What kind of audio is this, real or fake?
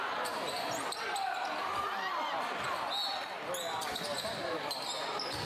real